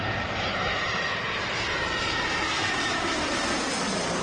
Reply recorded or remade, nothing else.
remade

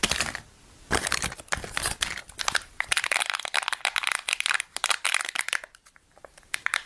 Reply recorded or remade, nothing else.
remade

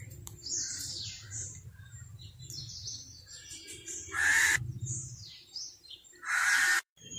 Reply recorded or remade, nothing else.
remade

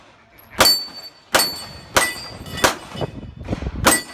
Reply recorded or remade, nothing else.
recorded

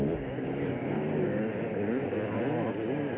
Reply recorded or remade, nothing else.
recorded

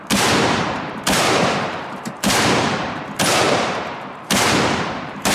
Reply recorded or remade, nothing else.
remade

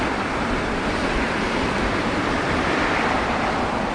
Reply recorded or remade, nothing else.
remade